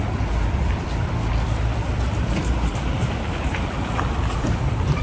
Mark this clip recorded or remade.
remade